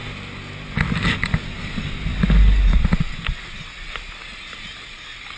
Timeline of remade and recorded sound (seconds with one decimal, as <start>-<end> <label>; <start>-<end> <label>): 0.0-5.4 recorded